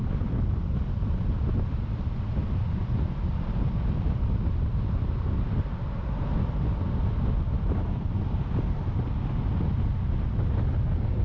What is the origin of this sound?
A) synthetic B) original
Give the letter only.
B